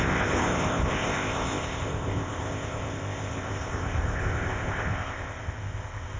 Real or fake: fake